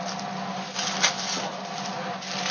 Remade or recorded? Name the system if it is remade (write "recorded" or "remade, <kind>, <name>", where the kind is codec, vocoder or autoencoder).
recorded